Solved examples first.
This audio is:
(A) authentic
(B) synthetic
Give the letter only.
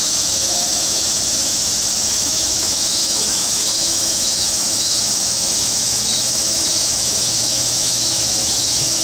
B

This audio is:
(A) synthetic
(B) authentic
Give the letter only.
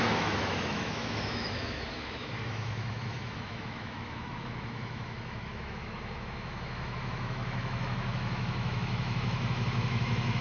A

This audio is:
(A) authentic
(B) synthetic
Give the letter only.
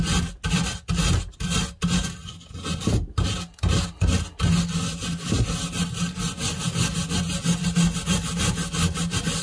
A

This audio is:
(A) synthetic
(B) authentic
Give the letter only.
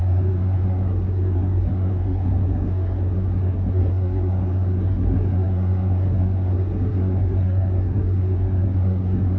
A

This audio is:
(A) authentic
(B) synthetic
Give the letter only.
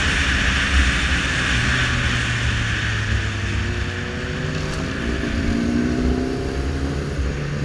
A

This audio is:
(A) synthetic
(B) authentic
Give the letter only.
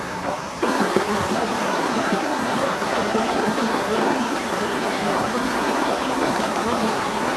A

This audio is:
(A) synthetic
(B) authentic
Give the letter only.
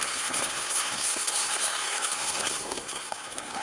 A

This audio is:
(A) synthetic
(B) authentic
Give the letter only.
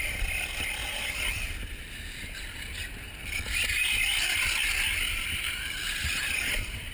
A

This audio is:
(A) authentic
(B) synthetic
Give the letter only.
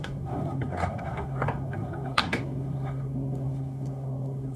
B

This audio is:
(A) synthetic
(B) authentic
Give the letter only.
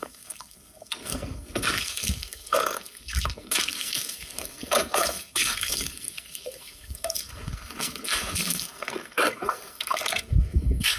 A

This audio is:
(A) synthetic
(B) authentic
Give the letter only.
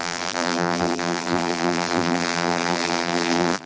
A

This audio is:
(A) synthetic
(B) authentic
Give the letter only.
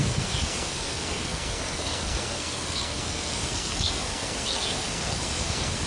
A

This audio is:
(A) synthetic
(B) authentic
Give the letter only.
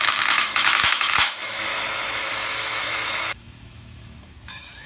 A